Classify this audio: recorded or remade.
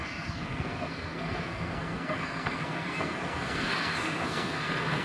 remade